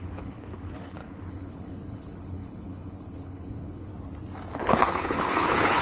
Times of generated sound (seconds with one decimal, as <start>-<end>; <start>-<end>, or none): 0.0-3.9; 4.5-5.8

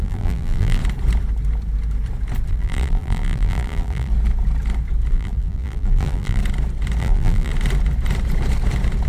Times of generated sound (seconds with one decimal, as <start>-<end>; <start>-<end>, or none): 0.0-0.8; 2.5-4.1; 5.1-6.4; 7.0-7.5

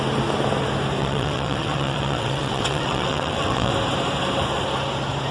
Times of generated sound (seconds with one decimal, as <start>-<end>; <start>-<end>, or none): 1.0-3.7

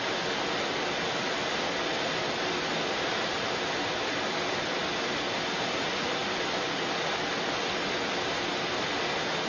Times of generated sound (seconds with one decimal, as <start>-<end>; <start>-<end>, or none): none

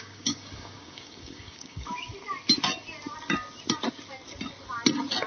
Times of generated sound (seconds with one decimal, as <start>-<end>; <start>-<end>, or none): 0.0-2.1

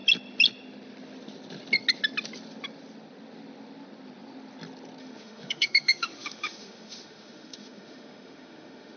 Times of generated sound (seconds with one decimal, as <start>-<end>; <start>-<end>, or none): 5.0-9.0